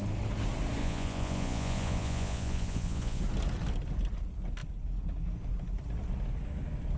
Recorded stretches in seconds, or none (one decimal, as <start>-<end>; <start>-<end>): 0.0-0.8; 3.2-7.0